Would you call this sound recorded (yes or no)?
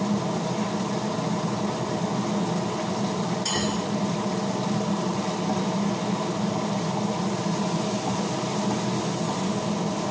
yes